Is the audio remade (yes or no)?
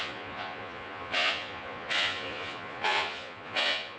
yes